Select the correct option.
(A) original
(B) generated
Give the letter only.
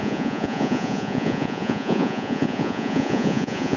B